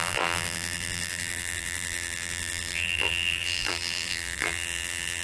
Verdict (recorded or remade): remade